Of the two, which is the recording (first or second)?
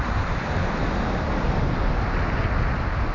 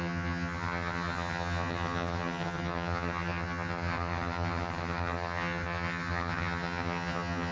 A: first